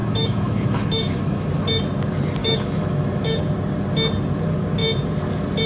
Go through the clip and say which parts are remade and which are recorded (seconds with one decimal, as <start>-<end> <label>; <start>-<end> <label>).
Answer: 0.0-1.5 remade; 1.5-2.4 recorded; 2.4-3.4 remade; 3.4-5.7 recorded